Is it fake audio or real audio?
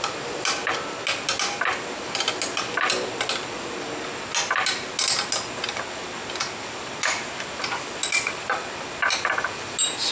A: real